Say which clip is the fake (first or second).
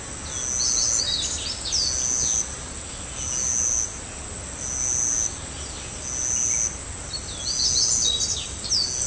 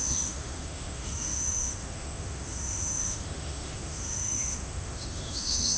second